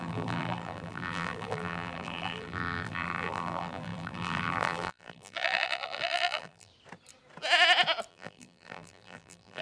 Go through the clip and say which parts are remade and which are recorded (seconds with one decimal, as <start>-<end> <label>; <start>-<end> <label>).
0.0-6.7 remade; 6.7-8.1 recorded; 8.1-9.6 remade